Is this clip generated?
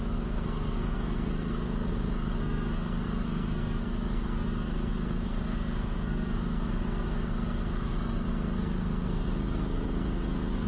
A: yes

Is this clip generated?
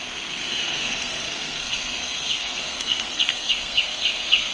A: yes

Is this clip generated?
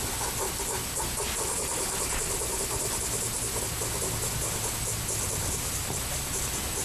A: no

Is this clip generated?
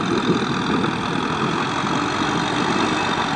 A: no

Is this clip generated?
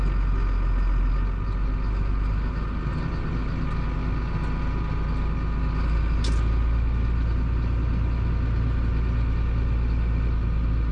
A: no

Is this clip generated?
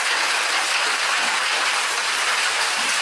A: no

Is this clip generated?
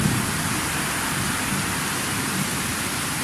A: no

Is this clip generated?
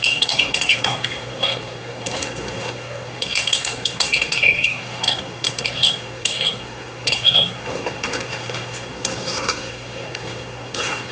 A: yes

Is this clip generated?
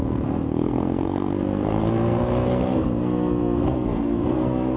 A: yes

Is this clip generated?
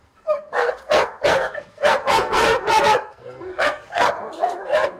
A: yes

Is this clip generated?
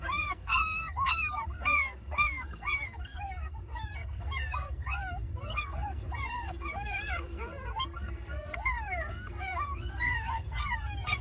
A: yes